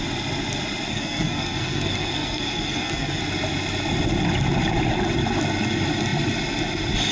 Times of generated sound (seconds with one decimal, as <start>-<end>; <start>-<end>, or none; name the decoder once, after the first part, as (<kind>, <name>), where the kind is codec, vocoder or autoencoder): 0.9-3.2 (codec, SNAC)